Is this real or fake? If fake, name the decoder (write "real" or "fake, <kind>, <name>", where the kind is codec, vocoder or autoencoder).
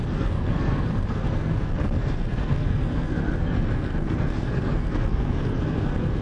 fake, codec, SNAC